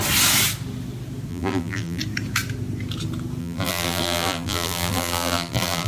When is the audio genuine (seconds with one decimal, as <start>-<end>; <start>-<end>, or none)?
0.0-1.3; 2.0-3.4